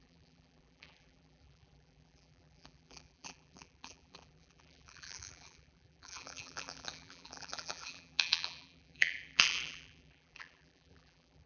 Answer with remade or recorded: remade